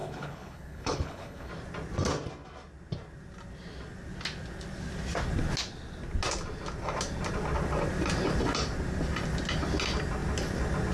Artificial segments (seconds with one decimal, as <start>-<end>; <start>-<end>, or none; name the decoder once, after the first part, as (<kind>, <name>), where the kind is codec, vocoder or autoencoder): 0.0-1.5 (codec, HILCodec)